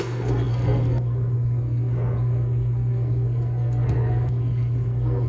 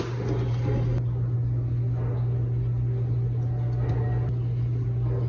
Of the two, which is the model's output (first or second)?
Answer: first